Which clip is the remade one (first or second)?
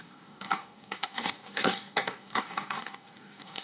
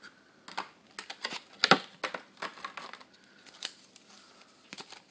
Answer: first